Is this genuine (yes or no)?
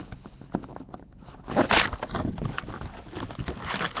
yes